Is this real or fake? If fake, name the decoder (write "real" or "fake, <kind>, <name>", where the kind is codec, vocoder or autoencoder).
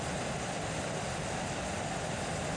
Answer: real